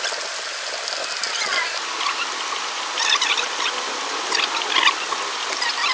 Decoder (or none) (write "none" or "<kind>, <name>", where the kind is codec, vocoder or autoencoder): none